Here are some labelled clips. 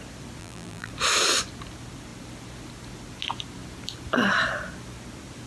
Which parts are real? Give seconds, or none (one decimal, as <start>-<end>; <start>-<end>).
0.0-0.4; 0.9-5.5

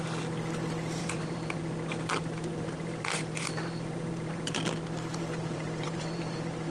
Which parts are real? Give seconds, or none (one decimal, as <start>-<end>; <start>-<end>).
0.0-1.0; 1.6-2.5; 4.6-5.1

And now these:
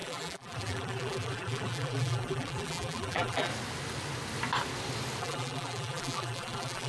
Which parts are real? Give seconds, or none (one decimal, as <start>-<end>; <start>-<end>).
3.5-5.2

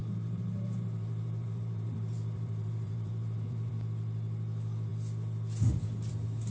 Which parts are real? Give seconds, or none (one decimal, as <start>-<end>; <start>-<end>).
3.7-6.5

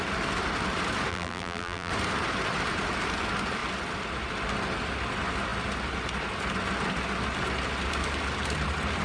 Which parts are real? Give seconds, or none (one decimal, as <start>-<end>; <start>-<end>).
0.0-1.1; 1.9-9.0